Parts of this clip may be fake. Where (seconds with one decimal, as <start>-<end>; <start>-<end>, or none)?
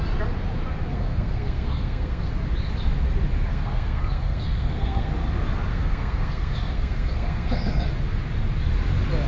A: 0.9-2.3; 3.5-5.1; 5.7-7.9